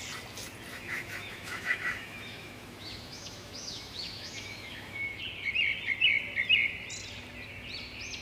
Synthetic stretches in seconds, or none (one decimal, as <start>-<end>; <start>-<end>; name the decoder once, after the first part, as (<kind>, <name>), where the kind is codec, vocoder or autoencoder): 0.7-5.2 (autoencoder, DAC-VAE)